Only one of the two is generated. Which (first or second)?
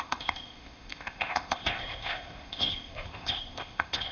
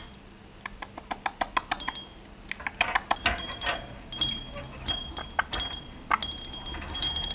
first